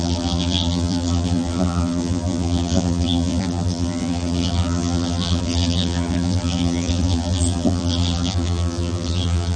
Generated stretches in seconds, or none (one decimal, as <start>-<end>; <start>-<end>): 0.0-9.6